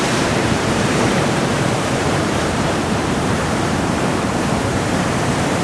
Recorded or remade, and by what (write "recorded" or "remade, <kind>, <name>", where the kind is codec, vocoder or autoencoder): remade, vocoder, BigVGAN v2